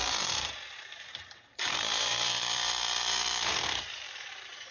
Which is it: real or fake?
fake